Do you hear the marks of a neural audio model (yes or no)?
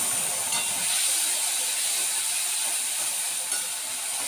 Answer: no